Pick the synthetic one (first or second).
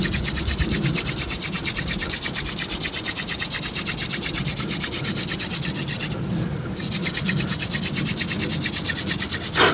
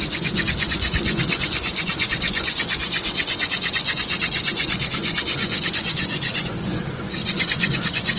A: second